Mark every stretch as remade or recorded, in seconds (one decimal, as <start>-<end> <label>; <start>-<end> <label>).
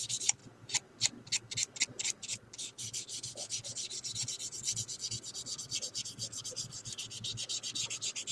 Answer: 0.0-8.3 recorded